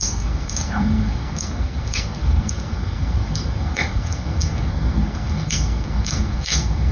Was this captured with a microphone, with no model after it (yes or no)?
no